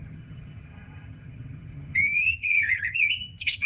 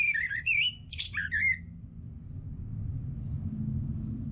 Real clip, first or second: second